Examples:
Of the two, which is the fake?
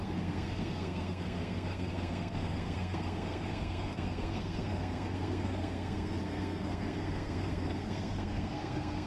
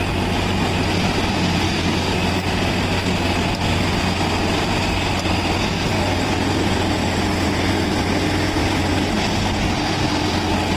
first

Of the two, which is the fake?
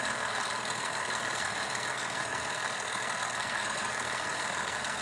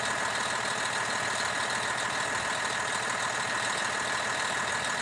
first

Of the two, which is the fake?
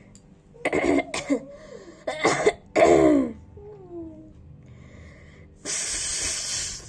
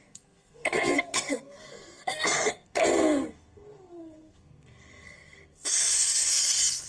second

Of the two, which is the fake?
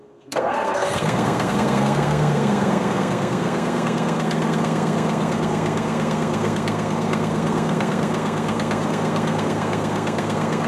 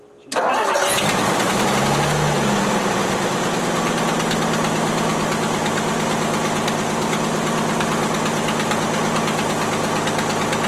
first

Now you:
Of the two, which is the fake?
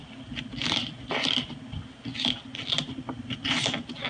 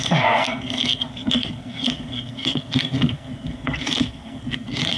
second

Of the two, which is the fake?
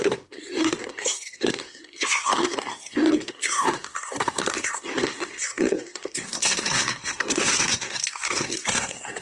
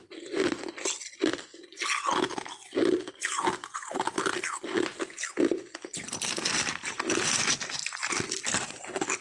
first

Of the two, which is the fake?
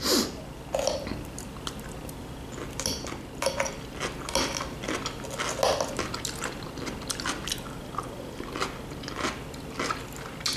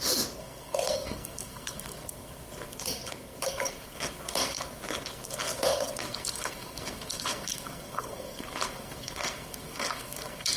second